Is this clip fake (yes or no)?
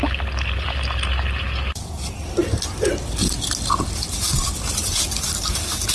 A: no